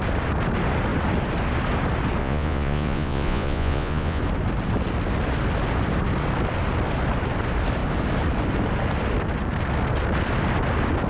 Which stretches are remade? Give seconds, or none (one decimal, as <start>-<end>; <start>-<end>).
2.2-4.2